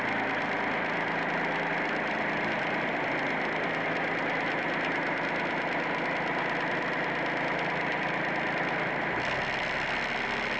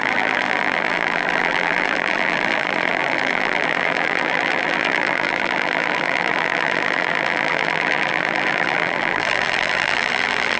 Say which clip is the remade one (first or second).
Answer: second